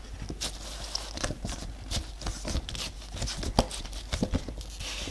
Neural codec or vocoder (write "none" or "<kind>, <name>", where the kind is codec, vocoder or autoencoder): none